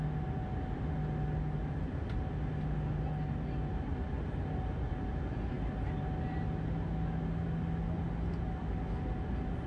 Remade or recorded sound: recorded